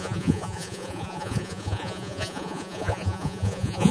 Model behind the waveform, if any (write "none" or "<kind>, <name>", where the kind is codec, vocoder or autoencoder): vocoder, Vocos